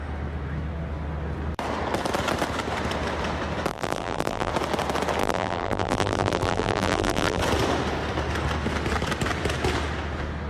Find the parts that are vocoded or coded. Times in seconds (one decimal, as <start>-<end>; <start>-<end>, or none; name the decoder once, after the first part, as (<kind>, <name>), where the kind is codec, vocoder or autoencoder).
3.7-4.5 (vocoder, BigVGAN v2); 5.2-7.4